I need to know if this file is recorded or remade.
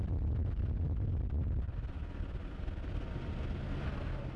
recorded